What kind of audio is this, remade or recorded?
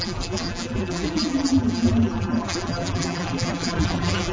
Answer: remade